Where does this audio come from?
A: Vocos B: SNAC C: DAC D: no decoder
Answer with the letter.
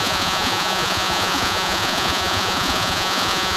A